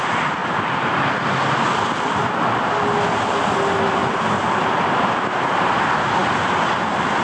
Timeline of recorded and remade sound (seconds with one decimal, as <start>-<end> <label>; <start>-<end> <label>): 0.0-4.0 recorded; 4.0-5.4 remade; 5.4-7.2 recorded